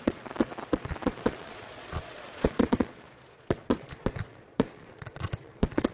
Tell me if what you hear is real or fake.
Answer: fake